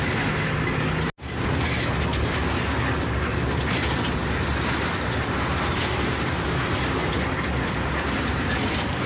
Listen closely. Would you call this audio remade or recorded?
recorded